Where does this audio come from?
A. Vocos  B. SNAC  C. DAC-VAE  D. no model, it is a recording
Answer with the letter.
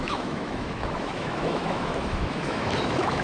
C